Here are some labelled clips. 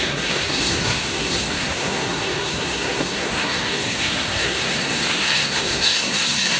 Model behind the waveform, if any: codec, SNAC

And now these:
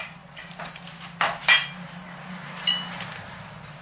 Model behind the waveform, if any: none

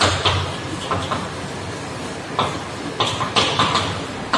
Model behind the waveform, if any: none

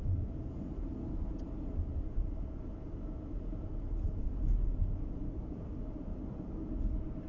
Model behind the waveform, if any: none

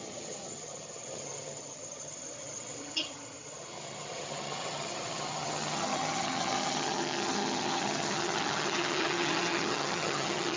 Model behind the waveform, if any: vocoder, HiFi-GAN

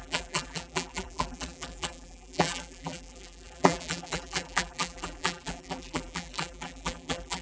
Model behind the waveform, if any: vocoder, BigVGAN v2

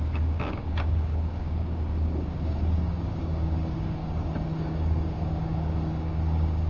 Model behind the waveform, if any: codec, DAC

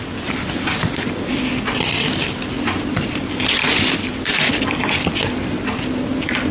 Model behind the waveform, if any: none